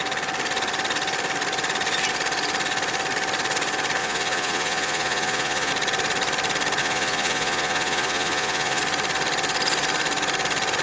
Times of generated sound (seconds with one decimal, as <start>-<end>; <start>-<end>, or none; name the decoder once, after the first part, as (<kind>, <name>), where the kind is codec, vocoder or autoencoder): 4.0-5.7 (vocoder, Vocos); 6.8-8.8